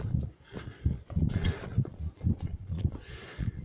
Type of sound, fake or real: fake